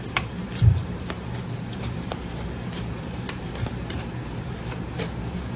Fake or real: fake